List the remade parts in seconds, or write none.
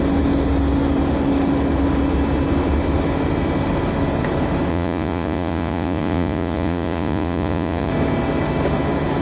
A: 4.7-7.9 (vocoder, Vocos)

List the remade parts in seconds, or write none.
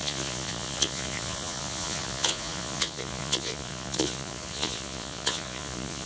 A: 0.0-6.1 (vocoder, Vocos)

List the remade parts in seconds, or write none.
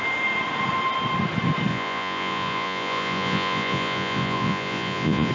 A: 1.7-5.3 (vocoder, Vocos)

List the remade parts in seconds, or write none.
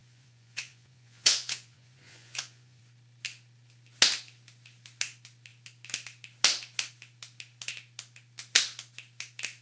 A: 0.0-2.8 (vocoder, Vocos)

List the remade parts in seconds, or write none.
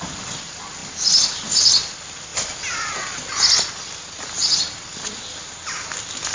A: none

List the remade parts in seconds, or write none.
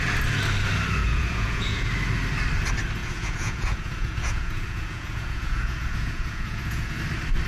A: 1.0-1.9 (vocoder, Vocos); 3.0-7.0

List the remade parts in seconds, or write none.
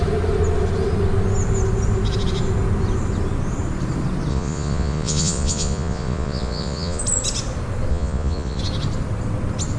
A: 4.3-7.0 (vocoder, Vocos); 7.9-8.6